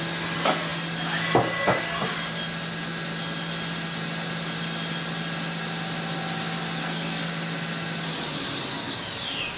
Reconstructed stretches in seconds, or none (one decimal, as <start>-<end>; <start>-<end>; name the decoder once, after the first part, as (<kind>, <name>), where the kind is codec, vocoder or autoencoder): 6.8-7.3 (codec, SNAC)